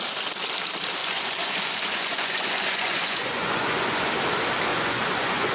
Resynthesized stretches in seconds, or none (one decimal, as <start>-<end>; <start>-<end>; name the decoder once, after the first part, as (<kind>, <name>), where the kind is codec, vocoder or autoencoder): 1.0-4.1 (vocoder, Vocos); 4.7-5.5